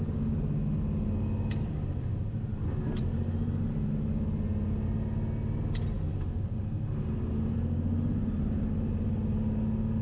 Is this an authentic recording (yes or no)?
yes